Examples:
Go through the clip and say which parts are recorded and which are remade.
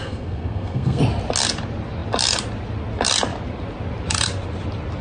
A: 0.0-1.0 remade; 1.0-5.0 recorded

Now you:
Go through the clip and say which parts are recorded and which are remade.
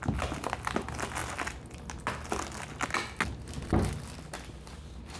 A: 0.0-5.2 recorded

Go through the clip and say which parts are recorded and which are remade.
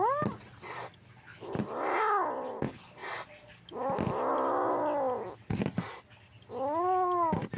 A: 0.0-1.3 recorded; 1.3-2.0 remade; 2.0-7.6 recorded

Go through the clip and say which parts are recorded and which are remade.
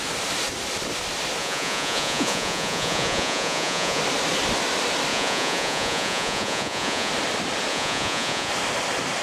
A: 0.0-1.4 recorded; 1.4-4.0 remade; 4.0-5.1 recorded; 5.1-7.1 remade; 7.1-7.7 recorded; 7.7-8.5 remade; 8.5-9.2 recorded